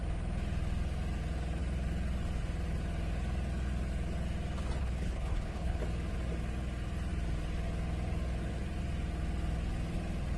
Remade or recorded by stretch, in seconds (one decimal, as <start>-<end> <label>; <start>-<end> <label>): 0.0-4.8 recorded; 4.8-5.8 remade; 5.8-10.4 recorded